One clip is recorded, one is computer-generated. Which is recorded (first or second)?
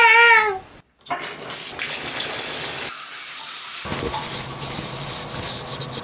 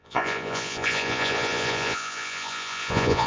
first